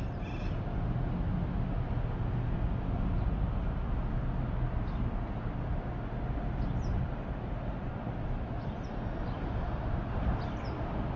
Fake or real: real